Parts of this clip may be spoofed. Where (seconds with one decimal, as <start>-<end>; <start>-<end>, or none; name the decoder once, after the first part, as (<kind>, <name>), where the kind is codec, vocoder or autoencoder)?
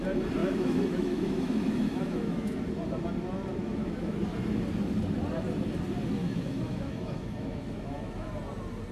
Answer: 0.4-2.6 (autoencoder, DAC-VAE); 3.7-4.2; 6.2-8.3